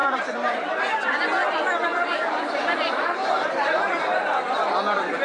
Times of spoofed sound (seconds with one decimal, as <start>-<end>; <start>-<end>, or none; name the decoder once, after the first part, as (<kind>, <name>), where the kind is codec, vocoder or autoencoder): 0.0-0.7 (vocoder, BigVGAN v2); 2.1-4.0